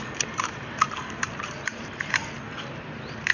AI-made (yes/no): yes